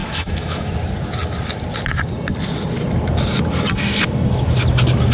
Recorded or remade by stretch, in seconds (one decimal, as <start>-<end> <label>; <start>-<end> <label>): 0.0-0.7 remade; 0.7-5.1 recorded